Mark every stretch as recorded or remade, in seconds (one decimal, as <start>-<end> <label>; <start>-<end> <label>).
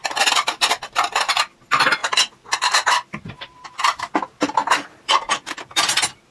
0.0-2.0 recorded; 2.0-4.1 remade; 4.1-6.3 recorded